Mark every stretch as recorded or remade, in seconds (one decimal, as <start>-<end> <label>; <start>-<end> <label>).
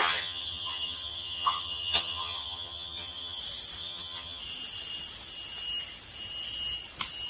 0.0-3.4 remade; 3.4-3.8 recorded; 3.8-4.4 remade; 4.4-7.3 recorded